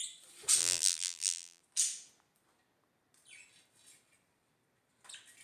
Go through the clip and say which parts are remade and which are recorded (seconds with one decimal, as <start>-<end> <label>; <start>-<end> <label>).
0.0-0.6 recorded; 0.6-1.6 remade; 1.6-5.4 recorded